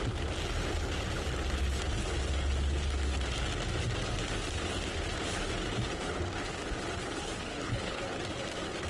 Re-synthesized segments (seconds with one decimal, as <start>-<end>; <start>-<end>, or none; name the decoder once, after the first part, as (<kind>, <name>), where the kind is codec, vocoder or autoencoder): 7.5-8.0 (codec, HILCodec)